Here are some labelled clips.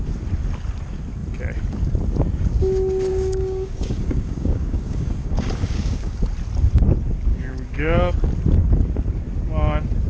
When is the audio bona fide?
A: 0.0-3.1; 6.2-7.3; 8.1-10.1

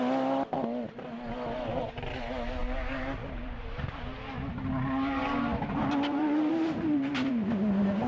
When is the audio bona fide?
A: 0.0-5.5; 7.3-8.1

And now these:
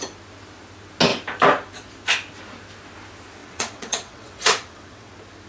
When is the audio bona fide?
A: 0.0-3.4; 5.1-5.5

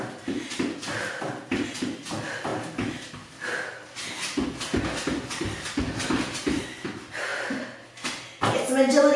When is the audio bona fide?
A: 0.0-9.2

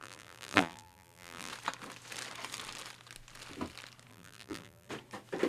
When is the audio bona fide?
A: 1.5-4.1; 4.9-5.5